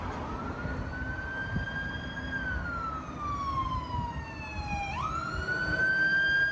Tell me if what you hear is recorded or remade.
recorded